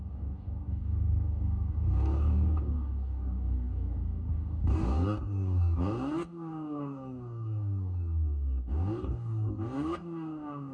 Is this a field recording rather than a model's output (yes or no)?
no